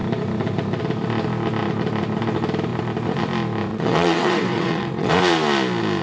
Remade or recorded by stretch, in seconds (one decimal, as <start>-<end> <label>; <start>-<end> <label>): 0.0-3.7 recorded; 3.7-5.1 remade; 5.1-6.0 recorded

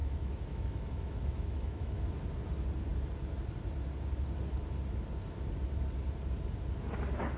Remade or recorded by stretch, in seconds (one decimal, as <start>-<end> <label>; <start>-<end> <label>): 0.0-2.0 remade; 2.0-7.4 recorded

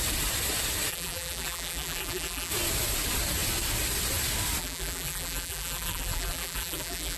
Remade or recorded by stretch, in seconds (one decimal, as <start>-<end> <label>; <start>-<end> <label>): 0.0-0.9 recorded; 0.9-2.5 remade; 2.5-4.6 recorded; 4.6-7.2 remade

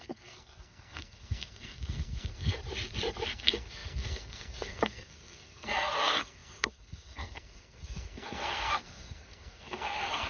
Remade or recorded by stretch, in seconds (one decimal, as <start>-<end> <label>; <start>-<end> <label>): 0.0-2.6 remade; 2.6-3.3 recorded; 3.3-10.3 remade

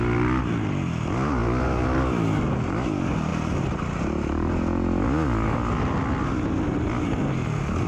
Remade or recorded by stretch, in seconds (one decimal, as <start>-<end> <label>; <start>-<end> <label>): 0.0-7.9 recorded